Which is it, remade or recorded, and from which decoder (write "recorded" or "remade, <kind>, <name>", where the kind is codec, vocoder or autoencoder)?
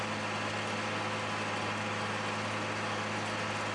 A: recorded